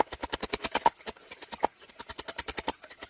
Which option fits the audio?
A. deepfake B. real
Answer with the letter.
B